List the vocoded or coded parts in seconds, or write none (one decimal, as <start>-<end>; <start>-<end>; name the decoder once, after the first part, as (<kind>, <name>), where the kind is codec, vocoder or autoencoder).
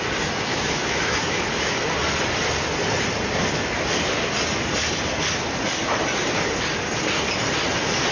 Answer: 0.5-1.8 (autoencoder, DAC-VAE)